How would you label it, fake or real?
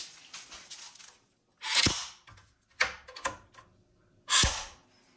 real